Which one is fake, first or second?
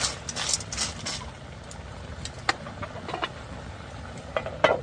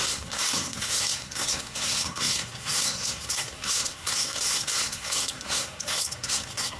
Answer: second